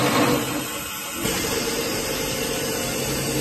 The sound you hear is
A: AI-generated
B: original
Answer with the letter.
B